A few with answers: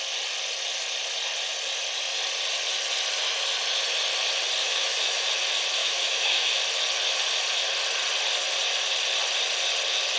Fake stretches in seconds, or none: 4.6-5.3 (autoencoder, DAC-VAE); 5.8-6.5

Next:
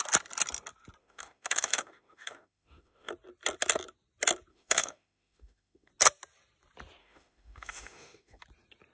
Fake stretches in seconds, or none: 1.0-3.1 (autoencoder, DAC-VAE); 4.5-5.9; 7.0-8.4

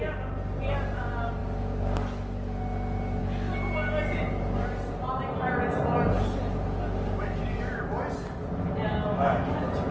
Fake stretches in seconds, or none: none

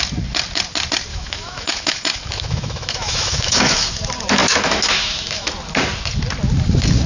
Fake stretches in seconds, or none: 1.1-3.9 (autoencoder, DAC-VAE); 4.4-5.5